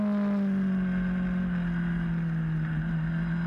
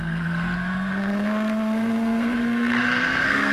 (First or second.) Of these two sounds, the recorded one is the first